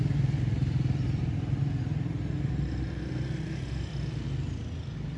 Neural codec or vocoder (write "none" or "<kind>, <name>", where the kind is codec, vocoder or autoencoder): none